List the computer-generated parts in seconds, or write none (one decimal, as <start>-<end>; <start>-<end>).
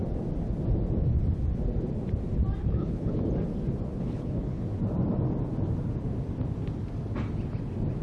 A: 2.6-3.2; 3.9-4.6